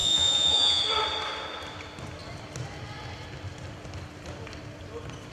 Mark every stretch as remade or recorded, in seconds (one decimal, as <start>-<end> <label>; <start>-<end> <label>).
0.0-0.8 remade; 0.8-5.3 recorded